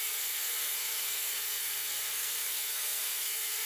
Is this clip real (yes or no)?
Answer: no